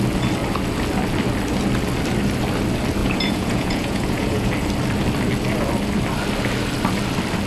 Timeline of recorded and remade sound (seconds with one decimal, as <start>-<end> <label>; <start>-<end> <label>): 0.0-3.0 recorded; 3.0-4.5 remade; 4.5-7.5 recorded